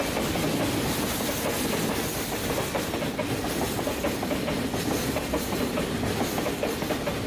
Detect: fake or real real